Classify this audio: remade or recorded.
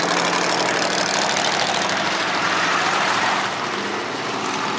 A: recorded